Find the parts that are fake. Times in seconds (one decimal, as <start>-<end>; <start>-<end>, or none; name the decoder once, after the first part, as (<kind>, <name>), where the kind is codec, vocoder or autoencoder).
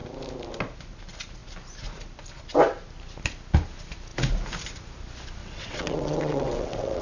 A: 5.4-7.0 (vocoder, WaveNeXt)